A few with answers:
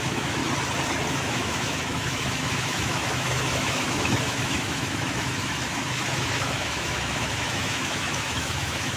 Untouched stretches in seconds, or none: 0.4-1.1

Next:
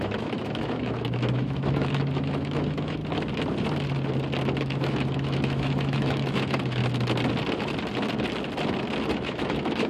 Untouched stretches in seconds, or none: 3.0-4.6; 6.8-9.1

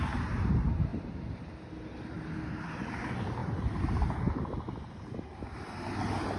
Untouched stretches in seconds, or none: 0.0-6.4

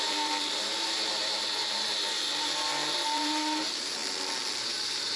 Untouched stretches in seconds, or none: 4.0-4.6